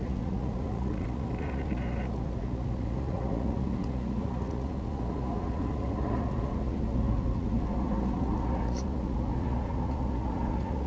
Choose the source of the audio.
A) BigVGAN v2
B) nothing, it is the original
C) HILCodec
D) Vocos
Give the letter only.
D